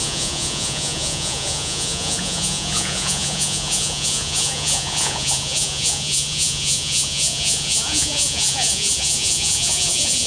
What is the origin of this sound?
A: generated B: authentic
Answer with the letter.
A